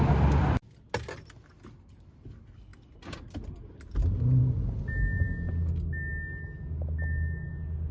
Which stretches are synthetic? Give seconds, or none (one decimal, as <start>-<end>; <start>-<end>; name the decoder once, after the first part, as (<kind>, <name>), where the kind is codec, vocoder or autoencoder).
none